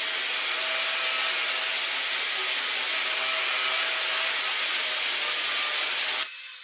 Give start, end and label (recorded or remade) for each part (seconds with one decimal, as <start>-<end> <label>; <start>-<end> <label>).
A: 0.0-6.6 recorded